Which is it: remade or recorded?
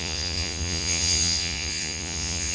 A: remade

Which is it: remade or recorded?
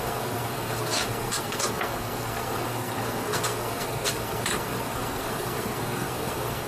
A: remade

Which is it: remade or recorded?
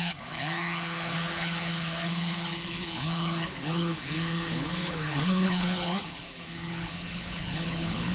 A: remade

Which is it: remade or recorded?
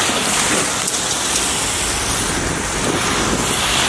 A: recorded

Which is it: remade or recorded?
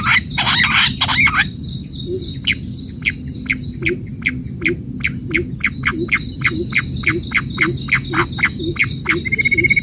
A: recorded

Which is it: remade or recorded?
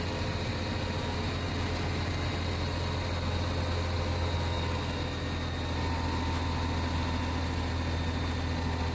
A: recorded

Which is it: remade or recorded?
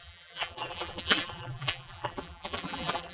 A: remade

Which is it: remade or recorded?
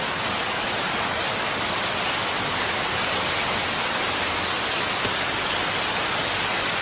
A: recorded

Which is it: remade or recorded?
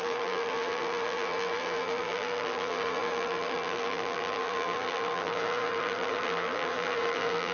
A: remade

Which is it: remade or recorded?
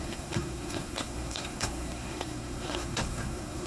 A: remade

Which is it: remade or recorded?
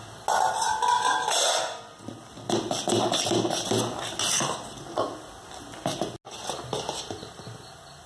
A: recorded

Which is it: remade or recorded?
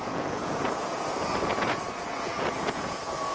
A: remade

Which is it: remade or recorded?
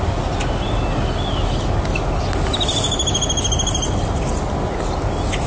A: recorded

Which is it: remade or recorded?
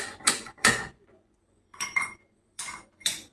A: remade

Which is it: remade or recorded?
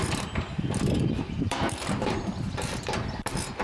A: remade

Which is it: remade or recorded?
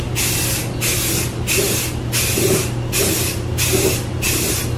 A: recorded